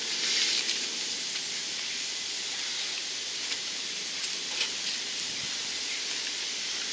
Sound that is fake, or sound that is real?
real